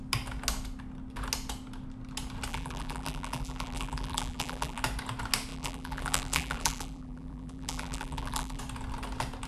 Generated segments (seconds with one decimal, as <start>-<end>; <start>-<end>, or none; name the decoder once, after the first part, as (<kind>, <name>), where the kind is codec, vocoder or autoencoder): 2.5-4.8 (vocoder, BigVGAN v2); 5.5-8.6